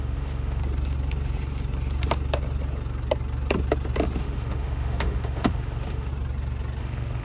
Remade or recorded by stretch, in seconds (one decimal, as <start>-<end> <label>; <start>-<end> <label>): 0.0-0.6 remade; 0.6-4.2 recorded; 4.2-6.1 remade; 6.1-6.8 recorded; 6.8-7.2 remade